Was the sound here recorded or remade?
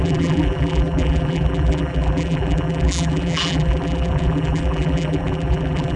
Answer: remade